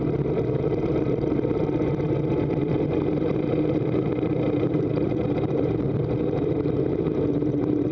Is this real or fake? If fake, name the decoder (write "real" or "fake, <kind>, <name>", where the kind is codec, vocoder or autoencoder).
fake, vocoder, BigVGAN v2